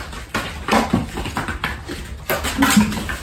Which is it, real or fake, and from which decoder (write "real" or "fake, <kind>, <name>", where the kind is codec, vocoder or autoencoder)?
real